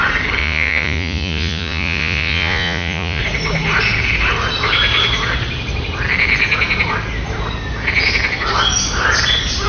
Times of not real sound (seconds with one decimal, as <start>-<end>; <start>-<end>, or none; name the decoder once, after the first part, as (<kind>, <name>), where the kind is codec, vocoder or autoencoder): 0.4-3.2 (vocoder, Vocos)